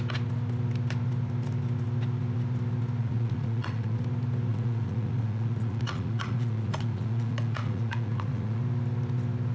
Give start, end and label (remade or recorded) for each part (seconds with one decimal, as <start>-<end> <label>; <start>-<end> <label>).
0.0-3.0 recorded; 3.0-4.0 remade; 4.0-4.5 recorded; 4.5-8.6 remade; 8.6-9.5 recorded